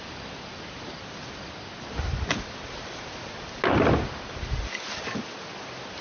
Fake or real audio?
real